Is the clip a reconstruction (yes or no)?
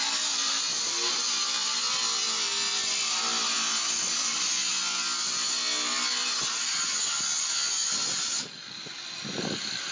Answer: no